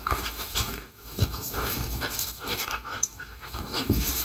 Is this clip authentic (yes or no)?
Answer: no